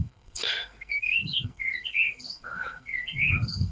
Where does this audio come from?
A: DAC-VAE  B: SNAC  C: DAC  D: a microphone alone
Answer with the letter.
B